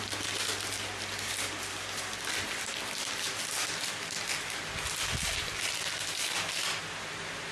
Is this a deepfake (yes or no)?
no